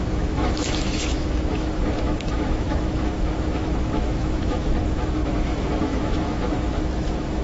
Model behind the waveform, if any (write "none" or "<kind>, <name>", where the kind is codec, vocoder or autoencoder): autoencoder, DAC-VAE